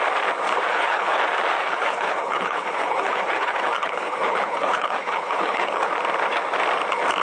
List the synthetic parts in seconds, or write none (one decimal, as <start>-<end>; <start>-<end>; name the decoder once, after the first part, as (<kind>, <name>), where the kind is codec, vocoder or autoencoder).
0.7-1.2 (codec, HILCodec); 1.6-5.9

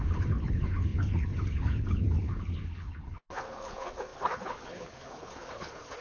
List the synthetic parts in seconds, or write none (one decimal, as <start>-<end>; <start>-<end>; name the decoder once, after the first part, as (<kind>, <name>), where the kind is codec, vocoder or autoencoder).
0.0-6.0 (codec, HILCodec)